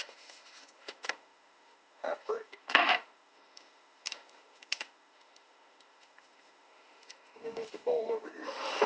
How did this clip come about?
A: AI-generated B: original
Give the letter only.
A